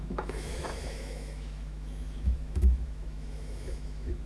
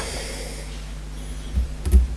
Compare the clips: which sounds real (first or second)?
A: second